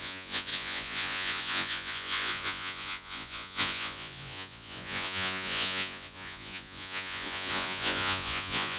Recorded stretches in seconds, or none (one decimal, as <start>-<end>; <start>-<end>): none